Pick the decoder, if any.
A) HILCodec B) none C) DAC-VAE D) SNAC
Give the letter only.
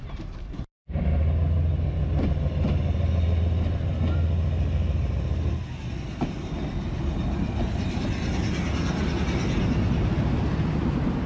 B